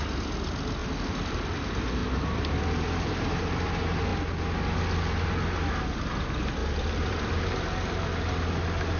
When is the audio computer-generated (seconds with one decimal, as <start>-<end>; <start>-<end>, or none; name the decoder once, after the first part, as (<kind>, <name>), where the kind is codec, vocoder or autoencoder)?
0.8-1.3 (vocoder, BigVGAN v2); 2.0-3.1; 6.6-7.5